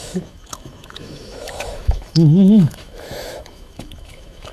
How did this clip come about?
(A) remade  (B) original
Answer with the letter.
A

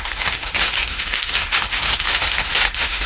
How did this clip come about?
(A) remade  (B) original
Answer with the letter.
A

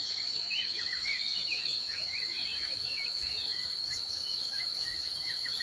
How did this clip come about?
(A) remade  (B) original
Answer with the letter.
A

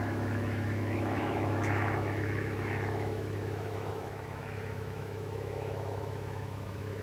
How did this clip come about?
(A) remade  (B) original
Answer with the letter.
A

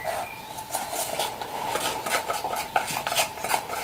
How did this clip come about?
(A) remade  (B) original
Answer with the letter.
B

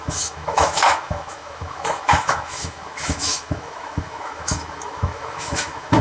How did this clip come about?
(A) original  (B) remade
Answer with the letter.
B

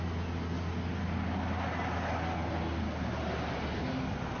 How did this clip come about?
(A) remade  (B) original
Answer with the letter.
B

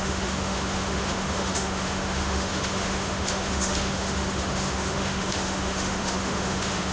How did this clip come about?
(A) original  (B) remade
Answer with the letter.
B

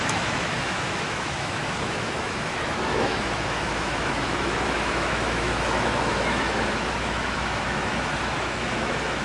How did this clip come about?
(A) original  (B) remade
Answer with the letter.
B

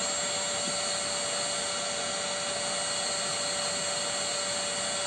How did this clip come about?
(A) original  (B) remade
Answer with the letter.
A